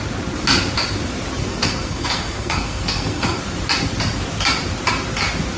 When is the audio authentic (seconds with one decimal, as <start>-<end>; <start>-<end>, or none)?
0.0-1.4; 3.4-5.6